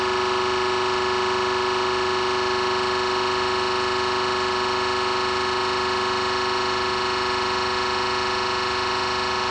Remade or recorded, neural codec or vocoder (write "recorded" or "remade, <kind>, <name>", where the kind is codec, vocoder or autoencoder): recorded